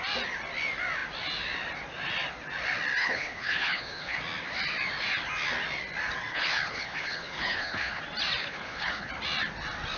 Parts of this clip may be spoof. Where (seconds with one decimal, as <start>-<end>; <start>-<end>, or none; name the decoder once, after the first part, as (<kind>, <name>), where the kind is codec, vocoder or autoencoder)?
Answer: 3.0-4.2 (codec, HILCodec); 6.3-8.0; 8.4-9.1